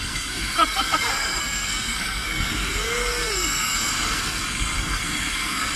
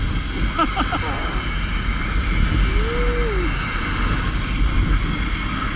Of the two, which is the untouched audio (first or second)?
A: second